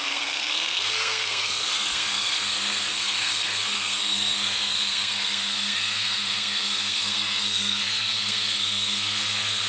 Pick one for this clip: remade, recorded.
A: remade